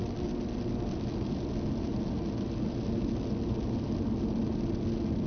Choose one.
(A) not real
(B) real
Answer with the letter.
B